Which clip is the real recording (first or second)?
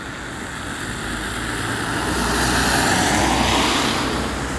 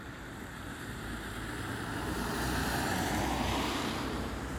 first